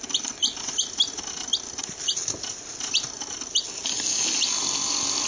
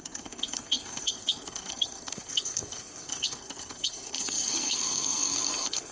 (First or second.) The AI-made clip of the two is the second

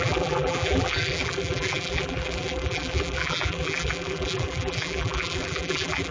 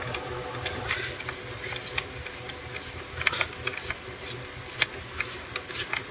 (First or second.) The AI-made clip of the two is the first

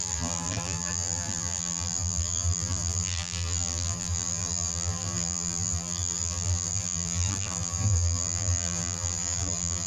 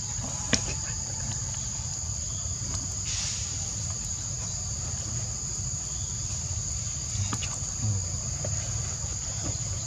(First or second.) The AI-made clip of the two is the first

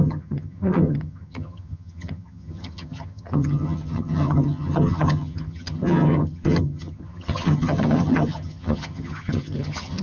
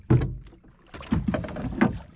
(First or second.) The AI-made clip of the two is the first